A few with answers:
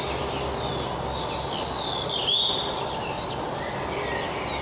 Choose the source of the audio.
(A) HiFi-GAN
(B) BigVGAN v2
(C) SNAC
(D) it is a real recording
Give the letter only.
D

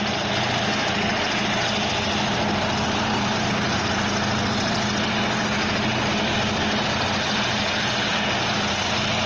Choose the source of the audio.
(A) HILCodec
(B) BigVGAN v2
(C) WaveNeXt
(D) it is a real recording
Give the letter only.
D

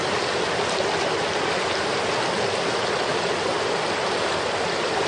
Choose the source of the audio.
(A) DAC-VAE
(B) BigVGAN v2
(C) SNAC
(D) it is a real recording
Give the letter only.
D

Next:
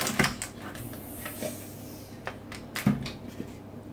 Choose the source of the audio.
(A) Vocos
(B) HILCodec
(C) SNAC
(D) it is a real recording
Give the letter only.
D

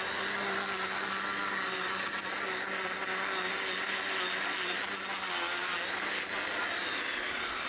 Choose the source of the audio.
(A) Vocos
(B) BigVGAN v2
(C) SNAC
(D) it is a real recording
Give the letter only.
D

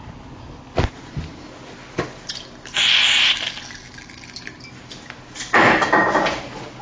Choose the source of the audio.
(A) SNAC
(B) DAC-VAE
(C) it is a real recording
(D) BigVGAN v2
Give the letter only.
C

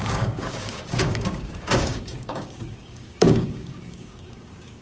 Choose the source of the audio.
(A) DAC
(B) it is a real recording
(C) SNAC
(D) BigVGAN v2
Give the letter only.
A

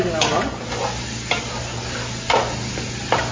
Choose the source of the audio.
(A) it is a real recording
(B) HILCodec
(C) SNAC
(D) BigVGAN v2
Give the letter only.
A